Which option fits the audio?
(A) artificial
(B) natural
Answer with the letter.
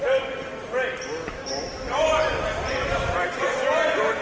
B